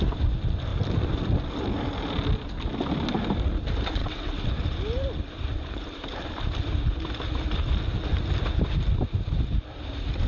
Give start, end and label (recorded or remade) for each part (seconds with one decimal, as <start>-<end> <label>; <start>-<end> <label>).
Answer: 0.0-4.0 recorded; 4.0-4.5 remade; 4.5-10.3 recorded